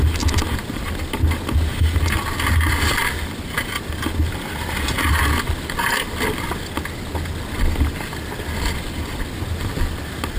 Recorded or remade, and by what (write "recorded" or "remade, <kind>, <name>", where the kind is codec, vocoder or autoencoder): recorded